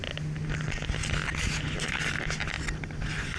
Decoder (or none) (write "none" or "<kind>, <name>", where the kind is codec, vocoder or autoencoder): none